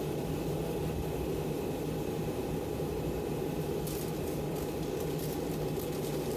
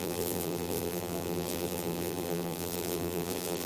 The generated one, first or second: second